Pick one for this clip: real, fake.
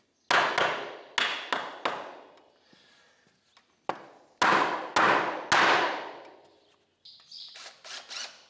real